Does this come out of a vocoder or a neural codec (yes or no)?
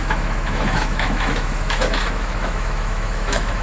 yes